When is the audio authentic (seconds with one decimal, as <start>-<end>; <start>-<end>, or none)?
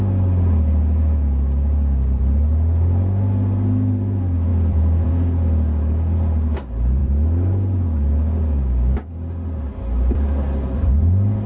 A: 0.0-4.5; 5.1-11.5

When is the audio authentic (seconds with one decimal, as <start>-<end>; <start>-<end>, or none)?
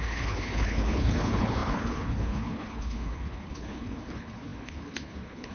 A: none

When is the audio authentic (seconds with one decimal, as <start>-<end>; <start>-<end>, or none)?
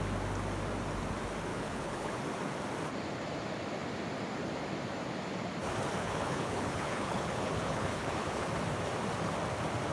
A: 0.0-1.5; 2.2-6.0; 8.5-9.9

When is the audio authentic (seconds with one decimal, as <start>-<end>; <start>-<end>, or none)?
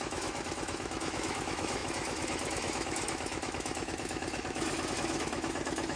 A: none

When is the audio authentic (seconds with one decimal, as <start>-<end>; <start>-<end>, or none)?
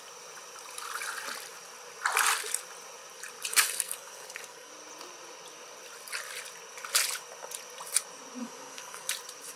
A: 0.0-3.5; 4.7-8.4; 9.1-9.6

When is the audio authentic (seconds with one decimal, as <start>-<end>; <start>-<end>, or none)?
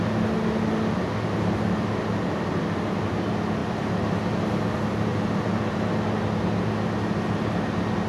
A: 0.0-5.1; 5.7-8.1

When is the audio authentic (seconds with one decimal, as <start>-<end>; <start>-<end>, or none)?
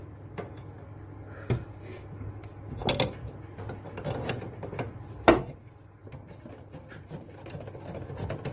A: 0.0-6.0; 6.5-8.5